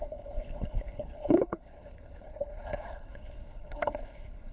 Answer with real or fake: fake